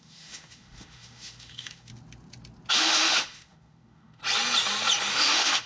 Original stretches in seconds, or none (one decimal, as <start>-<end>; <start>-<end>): 1.9-2.7; 4.2-5.1